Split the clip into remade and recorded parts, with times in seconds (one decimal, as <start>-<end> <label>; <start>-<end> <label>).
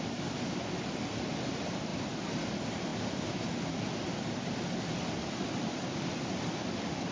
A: 0.0-1.9 remade; 1.9-2.5 recorded; 2.5-2.9 remade; 2.9-6.1 recorded; 6.1-7.1 remade